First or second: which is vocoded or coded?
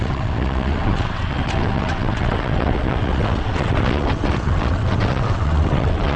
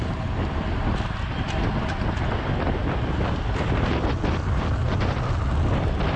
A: first